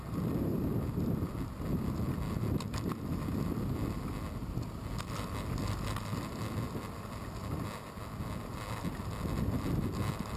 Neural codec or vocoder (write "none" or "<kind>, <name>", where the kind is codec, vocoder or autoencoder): none